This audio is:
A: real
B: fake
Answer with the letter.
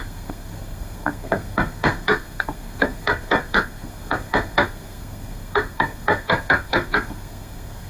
B